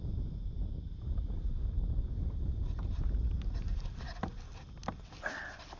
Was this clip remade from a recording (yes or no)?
no